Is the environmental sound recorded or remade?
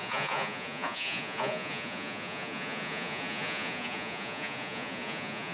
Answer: remade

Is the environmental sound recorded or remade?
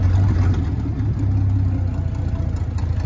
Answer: recorded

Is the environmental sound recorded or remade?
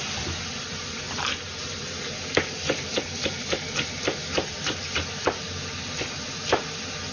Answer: recorded